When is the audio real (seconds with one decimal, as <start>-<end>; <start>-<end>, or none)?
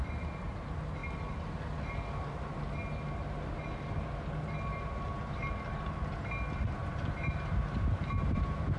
0.0-6.8